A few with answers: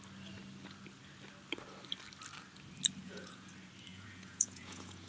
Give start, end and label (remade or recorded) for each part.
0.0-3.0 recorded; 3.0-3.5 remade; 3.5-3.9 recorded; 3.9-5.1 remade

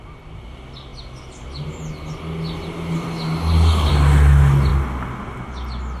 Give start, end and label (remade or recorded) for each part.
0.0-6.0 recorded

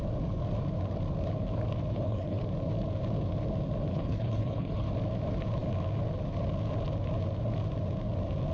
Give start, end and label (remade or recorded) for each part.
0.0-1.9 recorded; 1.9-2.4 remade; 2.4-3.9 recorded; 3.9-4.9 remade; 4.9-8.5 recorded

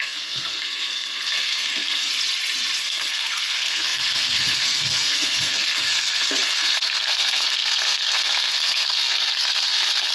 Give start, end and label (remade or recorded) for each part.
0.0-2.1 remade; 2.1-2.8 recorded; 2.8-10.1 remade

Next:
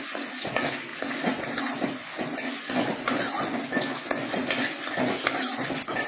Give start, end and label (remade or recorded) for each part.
0.0-6.1 remade

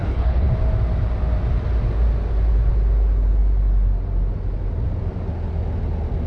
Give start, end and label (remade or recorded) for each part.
0.0-0.5 remade; 0.5-6.3 recorded

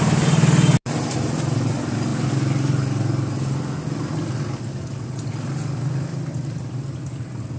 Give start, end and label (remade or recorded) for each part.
0.0-7.6 recorded

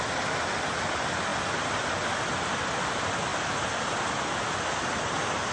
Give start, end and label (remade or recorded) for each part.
0.0-1.3 recorded; 1.3-2.6 remade; 2.6-3.3 recorded; 3.3-4.1 remade; 4.1-5.5 recorded